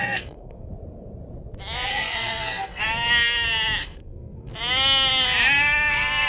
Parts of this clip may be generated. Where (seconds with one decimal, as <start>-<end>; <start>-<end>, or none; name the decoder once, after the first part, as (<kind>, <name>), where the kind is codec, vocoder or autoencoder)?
0.0-0.7 (codec, SNAC); 1.9-2.8; 3.8-4.5